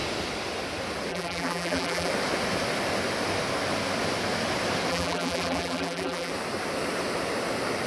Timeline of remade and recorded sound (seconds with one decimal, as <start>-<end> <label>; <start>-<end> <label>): 0.0-1.1 recorded; 1.1-2.1 remade; 2.1-4.9 recorded; 4.9-6.3 remade; 6.3-7.9 recorded